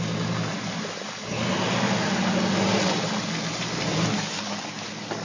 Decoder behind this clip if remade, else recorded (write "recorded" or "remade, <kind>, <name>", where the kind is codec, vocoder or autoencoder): recorded